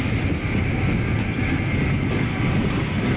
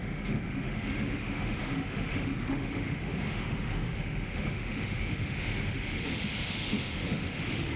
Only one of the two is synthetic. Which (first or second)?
second